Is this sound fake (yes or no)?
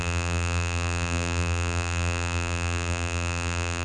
yes